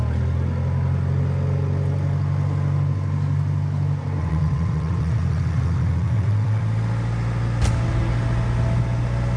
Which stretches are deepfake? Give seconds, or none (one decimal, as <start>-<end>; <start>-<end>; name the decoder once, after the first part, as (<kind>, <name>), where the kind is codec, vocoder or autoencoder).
4.2-6.6 (vocoder, WaveNeXt)